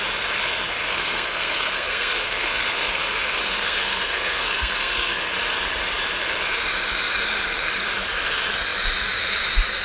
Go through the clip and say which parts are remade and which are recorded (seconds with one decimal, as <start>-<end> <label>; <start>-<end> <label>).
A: 0.0-0.9 recorded; 0.9-5.2 remade; 5.2-9.8 recorded